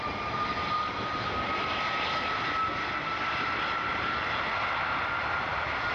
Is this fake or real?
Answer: real